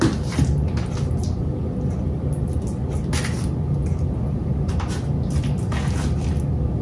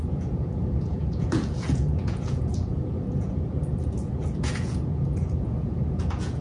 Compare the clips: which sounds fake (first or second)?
second